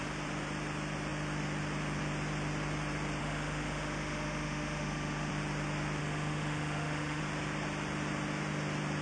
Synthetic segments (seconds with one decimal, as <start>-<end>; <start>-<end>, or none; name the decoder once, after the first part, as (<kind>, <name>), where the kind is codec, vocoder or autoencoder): 3.2-5.3 (autoencoder, DAC-VAE); 6.0-7.2